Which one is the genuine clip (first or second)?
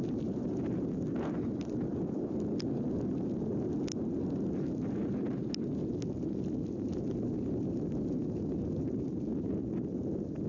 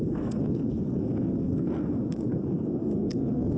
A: first